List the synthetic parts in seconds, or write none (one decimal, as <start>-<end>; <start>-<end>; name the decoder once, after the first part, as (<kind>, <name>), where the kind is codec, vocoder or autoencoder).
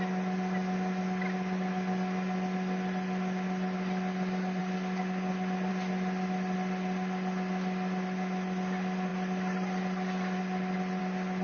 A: none